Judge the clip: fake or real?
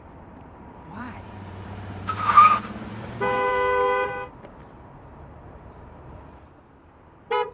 fake